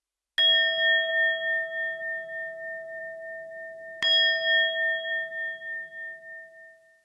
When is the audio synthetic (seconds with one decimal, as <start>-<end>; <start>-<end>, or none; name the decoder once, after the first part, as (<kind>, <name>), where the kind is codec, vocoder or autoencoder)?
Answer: none